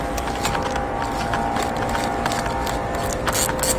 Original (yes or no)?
yes